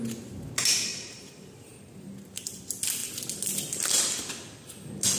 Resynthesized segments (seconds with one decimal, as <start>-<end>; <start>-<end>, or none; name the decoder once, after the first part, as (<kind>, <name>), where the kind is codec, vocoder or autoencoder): 0.9-2.6 (vocoder, BigVGAN v2)